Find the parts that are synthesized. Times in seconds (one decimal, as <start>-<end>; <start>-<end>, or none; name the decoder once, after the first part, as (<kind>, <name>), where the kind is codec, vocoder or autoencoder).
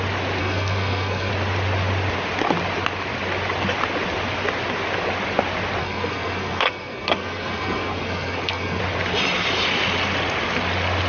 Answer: 0.4-1.3 (codec, SNAC); 5.8-8.8